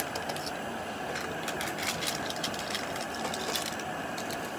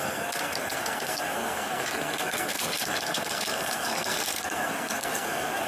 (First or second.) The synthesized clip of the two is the second